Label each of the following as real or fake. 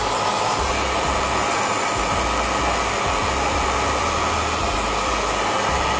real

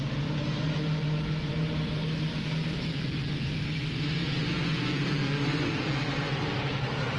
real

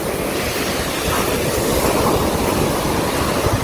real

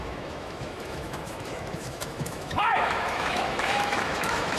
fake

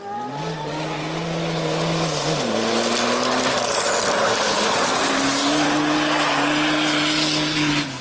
real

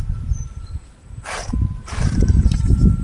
fake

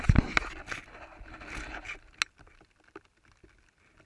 real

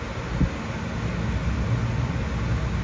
real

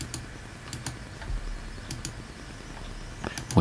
real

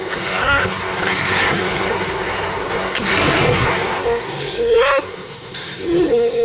fake